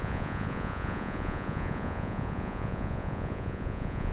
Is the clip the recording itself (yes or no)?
no